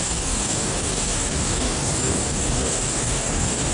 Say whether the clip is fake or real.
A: fake